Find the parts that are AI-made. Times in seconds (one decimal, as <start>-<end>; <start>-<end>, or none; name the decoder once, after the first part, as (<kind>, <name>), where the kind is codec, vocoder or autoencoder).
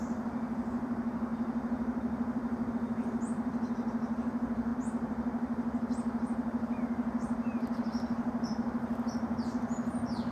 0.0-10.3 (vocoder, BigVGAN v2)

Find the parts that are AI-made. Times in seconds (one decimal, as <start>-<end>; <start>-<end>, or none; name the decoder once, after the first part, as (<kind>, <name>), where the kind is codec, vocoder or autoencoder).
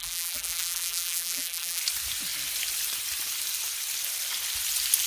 0.0-1.8 (vocoder, BigVGAN v2)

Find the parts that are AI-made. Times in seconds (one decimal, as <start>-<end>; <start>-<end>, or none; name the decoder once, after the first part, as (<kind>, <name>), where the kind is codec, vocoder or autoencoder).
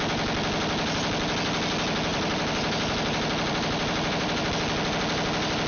2.1-4.5 (vocoder, BigVGAN v2)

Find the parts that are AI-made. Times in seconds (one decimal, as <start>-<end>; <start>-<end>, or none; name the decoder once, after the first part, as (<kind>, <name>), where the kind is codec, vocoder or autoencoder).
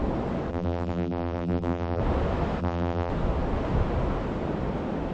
0.5-2.0 (vocoder, BigVGAN v2); 2.6-3.1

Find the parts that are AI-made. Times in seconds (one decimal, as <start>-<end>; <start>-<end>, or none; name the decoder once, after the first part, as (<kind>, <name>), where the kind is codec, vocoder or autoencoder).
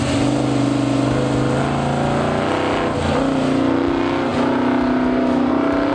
none